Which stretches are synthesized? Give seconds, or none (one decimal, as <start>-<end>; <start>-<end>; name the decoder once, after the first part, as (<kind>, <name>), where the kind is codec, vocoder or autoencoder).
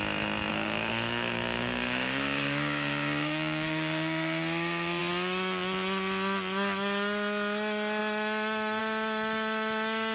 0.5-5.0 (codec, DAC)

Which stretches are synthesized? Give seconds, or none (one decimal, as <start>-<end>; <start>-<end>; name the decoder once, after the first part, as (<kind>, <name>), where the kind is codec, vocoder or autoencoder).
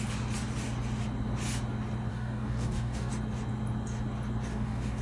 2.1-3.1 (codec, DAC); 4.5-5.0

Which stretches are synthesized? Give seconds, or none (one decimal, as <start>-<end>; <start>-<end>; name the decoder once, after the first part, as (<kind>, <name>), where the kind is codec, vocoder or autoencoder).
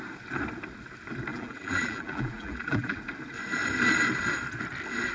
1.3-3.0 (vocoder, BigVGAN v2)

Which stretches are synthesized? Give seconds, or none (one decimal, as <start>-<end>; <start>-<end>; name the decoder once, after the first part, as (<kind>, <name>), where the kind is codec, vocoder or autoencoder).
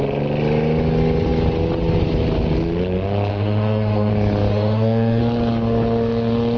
3.3-4.1 (autoencoder, DAC-VAE); 4.5-5.2